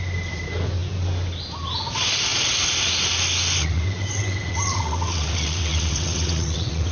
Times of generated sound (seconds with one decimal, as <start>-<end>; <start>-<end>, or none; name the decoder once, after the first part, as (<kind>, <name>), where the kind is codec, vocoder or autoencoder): 3.6-6.9 (vocoder, WaveNeXt)